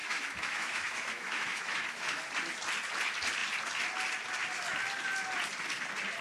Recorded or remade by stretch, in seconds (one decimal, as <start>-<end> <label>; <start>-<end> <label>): 0.0-2.2 remade; 2.2-6.2 recorded